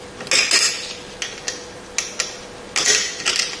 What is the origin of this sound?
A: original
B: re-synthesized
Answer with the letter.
A